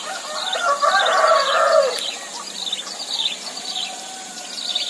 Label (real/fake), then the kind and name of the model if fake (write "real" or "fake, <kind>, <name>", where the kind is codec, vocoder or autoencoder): real